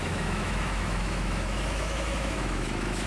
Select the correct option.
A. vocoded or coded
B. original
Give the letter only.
A